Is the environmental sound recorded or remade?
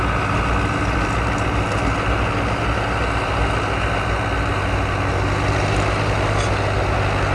recorded